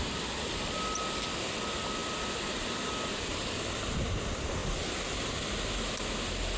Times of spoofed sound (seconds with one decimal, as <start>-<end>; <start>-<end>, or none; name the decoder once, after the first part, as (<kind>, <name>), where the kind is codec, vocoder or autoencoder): none